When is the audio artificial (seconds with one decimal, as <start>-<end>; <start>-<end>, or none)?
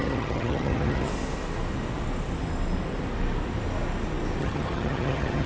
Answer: 0.0-1.1; 4.4-5.5